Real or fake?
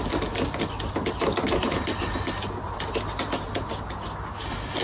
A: real